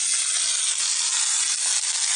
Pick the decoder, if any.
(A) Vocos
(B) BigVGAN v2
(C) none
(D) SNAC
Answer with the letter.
C